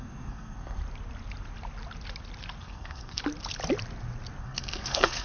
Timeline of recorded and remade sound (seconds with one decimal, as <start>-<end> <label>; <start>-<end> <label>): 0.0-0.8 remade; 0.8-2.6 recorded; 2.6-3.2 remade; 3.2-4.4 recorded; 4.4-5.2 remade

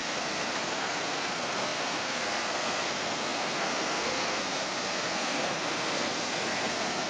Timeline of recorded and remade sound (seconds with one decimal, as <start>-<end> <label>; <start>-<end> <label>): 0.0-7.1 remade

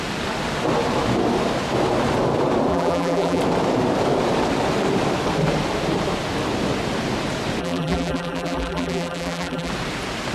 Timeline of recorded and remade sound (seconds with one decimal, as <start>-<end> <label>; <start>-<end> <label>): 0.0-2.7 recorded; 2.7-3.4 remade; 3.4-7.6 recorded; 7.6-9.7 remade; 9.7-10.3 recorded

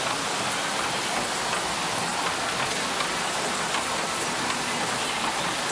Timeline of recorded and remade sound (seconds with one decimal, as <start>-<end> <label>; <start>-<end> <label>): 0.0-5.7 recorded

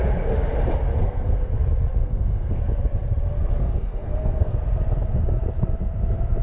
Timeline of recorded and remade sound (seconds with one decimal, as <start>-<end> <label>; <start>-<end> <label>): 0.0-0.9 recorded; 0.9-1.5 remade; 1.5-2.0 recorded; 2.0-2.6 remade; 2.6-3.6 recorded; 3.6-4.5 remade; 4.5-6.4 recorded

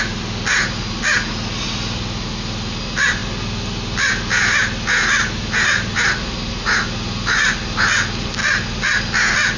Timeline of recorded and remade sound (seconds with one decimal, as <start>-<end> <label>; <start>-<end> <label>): 0.0-9.6 recorded